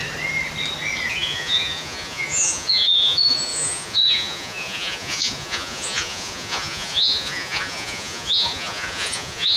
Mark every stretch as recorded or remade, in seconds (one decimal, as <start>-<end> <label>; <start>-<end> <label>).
0.0-1.1 recorded; 1.1-9.6 remade